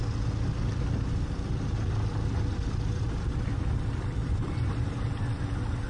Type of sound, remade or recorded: recorded